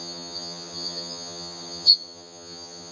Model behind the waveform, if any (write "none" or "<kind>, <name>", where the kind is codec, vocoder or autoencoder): vocoder, HiFi-GAN